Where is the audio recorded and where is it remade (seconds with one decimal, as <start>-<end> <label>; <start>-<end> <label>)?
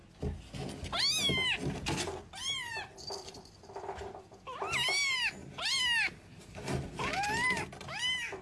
0.0-8.4 recorded